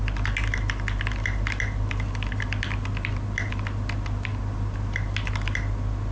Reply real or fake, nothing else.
real